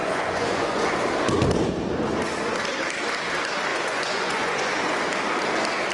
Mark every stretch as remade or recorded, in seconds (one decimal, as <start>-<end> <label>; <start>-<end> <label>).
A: 0.0-0.9 remade; 0.9-3.7 recorded; 3.7-5.1 remade; 5.1-5.9 recorded

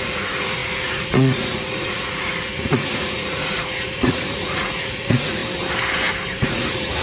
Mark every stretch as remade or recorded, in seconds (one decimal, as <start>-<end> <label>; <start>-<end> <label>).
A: 0.0-5.4 remade; 5.4-6.4 recorded; 6.4-7.0 remade

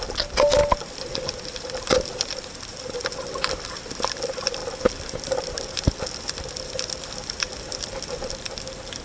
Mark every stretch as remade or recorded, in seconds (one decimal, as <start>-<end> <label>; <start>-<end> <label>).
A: 0.0-9.0 recorded